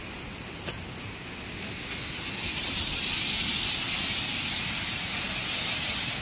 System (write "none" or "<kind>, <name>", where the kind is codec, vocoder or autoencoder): none